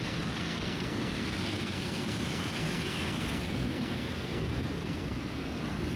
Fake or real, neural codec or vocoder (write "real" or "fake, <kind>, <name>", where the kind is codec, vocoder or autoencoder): fake, codec, SNAC